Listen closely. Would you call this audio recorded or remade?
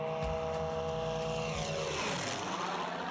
recorded